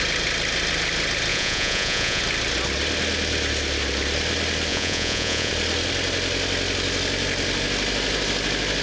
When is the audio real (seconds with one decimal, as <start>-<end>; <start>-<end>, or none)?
0.0-1.3; 2.2-4.7; 5.5-8.8